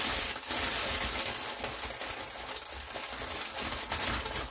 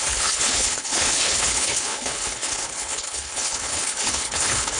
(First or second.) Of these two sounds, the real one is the first